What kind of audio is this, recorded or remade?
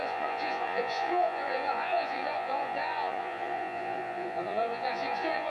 remade